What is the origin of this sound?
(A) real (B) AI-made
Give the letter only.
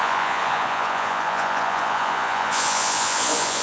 B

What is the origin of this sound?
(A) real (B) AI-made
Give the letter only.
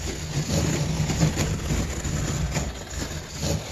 A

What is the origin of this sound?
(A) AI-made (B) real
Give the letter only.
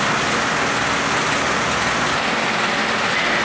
B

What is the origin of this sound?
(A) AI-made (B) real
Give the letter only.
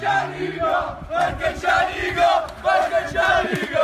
B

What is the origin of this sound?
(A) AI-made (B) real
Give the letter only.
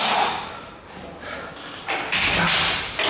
B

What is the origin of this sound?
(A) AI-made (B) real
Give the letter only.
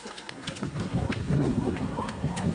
A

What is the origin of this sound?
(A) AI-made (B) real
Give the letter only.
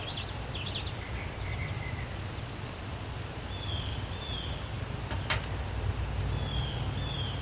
B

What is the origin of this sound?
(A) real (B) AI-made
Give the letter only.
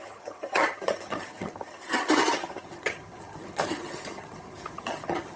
B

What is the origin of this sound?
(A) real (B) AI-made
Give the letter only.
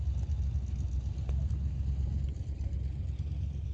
A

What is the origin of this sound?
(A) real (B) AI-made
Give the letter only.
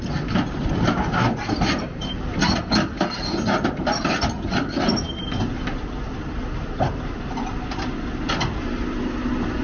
A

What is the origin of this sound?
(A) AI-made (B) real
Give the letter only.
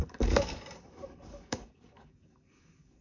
A